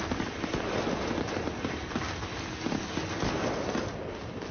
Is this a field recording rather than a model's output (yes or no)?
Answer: yes